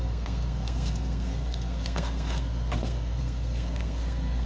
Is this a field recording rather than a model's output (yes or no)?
no